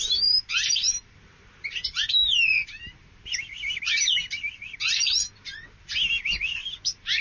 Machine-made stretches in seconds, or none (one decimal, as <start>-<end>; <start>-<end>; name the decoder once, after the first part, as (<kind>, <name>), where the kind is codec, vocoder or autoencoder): 0.0-4.2 (vocoder, BigVGAN v2); 5.8-7.2

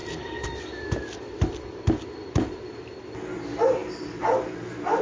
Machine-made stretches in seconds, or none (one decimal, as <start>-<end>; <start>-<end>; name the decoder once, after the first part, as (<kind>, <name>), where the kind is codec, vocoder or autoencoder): 0.0-3.0 (vocoder, BigVGAN v2)

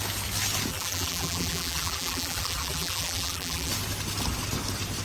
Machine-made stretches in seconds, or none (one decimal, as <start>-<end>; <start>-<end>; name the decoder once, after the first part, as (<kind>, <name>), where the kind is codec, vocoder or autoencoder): 0.7-3.7 (vocoder, BigVGAN v2)

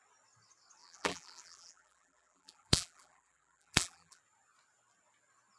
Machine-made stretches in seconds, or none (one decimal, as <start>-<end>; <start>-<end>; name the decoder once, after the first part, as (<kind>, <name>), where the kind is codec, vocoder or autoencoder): 0.8-4.2 (vocoder, BigVGAN v2)

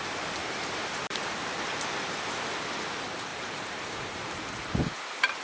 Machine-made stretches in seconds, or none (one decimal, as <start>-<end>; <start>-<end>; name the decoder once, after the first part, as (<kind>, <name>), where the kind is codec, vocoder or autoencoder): 0.4-1.4 (vocoder, BigVGAN v2); 3.3-4.9

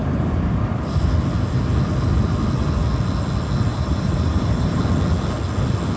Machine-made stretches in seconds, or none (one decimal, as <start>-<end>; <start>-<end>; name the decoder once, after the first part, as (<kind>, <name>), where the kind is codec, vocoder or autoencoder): 0.0-0.9 (vocoder, BigVGAN v2); 3.7-4.8